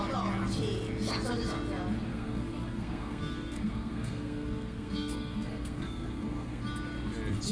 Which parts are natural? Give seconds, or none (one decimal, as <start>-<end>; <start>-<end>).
0.0-2.1; 6.6-7.5